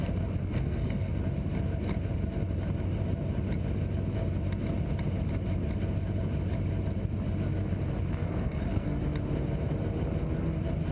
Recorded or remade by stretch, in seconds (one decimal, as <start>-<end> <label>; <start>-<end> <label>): 0.0-0.4 recorded; 0.4-1.1 remade; 1.1-8.2 recorded; 8.2-9.0 remade; 9.0-10.9 recorded